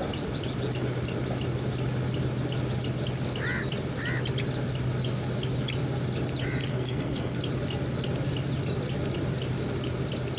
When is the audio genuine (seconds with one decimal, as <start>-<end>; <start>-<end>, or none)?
0.0-6.7; 7.4-10.4